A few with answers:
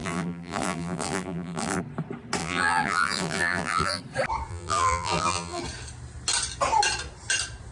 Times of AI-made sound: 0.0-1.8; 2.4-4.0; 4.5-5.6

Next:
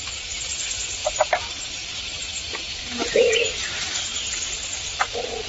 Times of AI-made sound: none

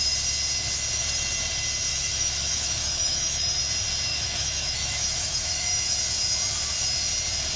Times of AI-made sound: 1.9-3.6; 4.1-6.0

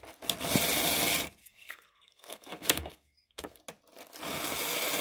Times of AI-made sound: 1.4-3.6